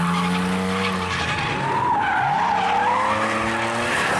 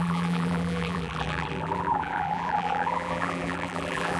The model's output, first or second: second